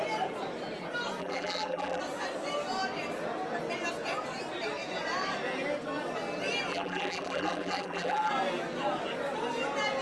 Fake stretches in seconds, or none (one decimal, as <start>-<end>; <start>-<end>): 1.2-2.0; 6.7-8.3